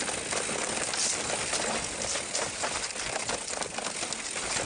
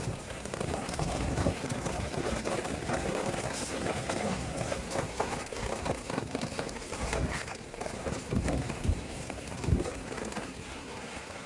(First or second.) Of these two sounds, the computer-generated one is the second